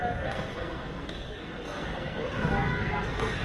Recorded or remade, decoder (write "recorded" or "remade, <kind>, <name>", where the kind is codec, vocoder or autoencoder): remade, codec, SNAC